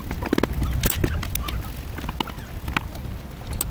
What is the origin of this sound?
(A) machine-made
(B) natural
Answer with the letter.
B